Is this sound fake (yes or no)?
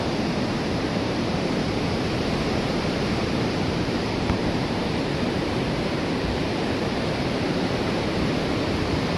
yes